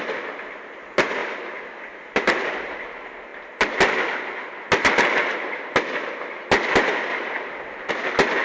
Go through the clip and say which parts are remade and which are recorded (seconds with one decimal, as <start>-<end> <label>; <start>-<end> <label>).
0.0-1.2 recorded; 1.2-2.5 remade; 2.5-7.1 recorded; 7.1-7.9 remade; 7.9-8.4 recorded